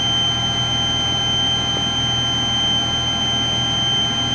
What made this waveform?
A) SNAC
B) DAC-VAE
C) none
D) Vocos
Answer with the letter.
C